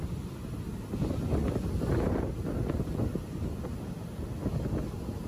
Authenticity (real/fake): real